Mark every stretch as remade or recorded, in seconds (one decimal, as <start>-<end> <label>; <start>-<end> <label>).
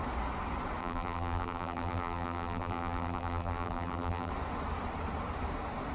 0.0-0.8 recorded; 0.8-4.3 remade; 4.3-5.9 recorded